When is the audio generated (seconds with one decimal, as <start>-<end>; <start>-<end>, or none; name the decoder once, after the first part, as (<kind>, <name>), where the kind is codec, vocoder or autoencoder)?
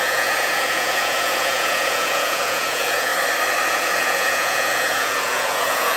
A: 0.0-3.1 (vocoder, Vocos); 3.7-6.0